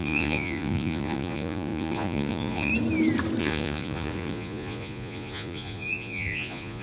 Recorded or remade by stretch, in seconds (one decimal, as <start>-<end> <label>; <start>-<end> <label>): 0.0-2.7 remade; 2.7-3.4 recorded; 3.4-6.8 remade